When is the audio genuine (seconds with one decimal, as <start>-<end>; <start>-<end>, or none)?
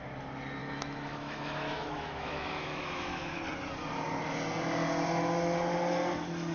0.0-0.6; 3.4-6.5